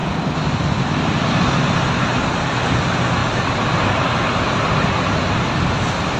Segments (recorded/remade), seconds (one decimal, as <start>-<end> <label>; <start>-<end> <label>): 0.0-6.2 recorded

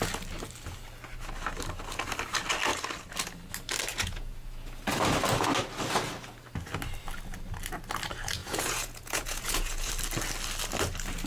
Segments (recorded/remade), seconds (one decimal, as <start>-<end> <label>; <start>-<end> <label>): 0.0-3.9 recorded; 3.9-4.8 remade; 4.8-8.4 recorded; 8.4-9.9 remade; 9.9-11.3 recorded

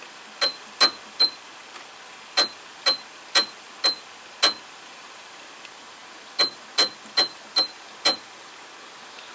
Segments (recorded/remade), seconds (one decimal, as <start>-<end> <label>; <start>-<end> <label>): 0.0-9.3 recorded

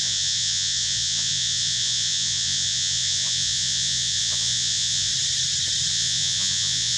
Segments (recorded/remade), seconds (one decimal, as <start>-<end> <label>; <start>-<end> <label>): 0.0-5.1 remade; 5.1-5.9 recorded; 5.9-7.0 remade

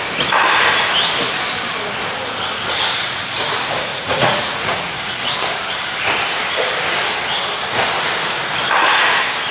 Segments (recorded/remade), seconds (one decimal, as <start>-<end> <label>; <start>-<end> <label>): 0.0-3.9 recorded; 3.9-5.1 remade; 5.1-9.5 recorded

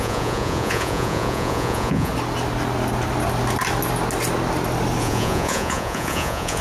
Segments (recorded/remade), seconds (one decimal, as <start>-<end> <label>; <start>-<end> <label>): 0.0-2.1 remade; 2.1-5.0 recorded; 5.0-6.6 remade

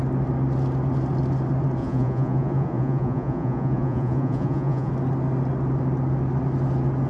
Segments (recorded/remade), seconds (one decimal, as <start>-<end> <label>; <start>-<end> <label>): 0.0-1.8 recorded; 1.8-4.9 remade; 4.9-7.1 recorded

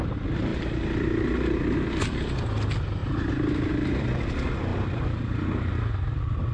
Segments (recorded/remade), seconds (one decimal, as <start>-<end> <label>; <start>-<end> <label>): 0.0-6.5 recorded